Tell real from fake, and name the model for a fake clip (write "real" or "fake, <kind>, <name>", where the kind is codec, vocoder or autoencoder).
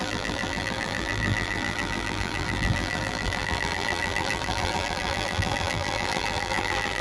fake, vocoder, BigVGAN v2